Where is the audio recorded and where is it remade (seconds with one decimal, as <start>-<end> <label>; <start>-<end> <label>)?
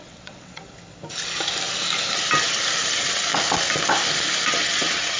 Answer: 0.0-0.6 remade; 0.6-2.9 recorded; 2.9-3.3 remade; 3.3-4.5 recorded; 4.5-5.2 remade